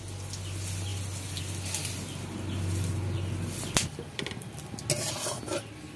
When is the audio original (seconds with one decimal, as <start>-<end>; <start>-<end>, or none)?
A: 0.0-6.0